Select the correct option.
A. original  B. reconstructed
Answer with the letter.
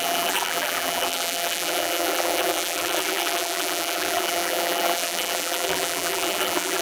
B